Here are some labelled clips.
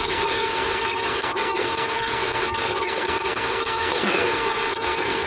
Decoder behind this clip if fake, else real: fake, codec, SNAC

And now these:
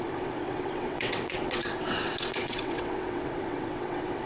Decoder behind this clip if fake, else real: fake, vocoder, WaveNeXt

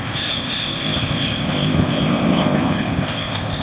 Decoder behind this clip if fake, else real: fake, codec, ZipCodec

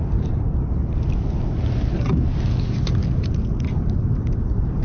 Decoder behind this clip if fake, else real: real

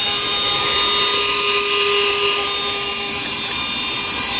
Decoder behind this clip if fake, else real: real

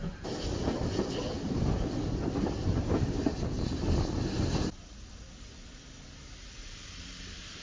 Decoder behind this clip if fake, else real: real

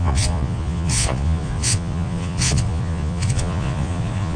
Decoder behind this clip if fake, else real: fake, vocoder, Vocos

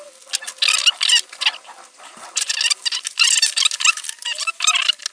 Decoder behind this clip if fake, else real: real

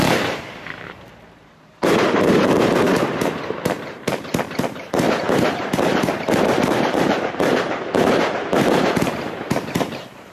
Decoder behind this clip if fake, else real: fake, vocoder, BigVGAN v2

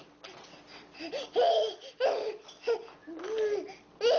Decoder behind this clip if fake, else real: real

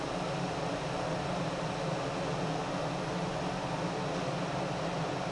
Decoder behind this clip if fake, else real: real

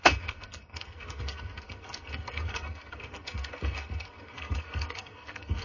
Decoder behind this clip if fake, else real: fake, codec, SNAC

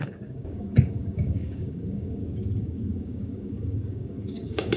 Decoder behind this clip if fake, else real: fake, codec, DAC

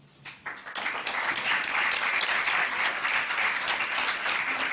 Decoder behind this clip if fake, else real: real